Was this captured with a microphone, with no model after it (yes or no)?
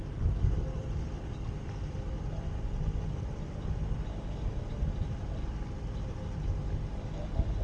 yes